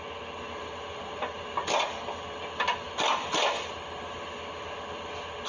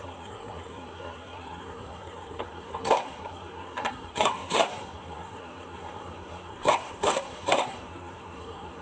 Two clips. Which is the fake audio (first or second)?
second